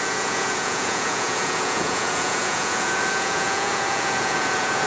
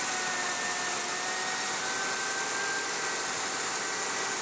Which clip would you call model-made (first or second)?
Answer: first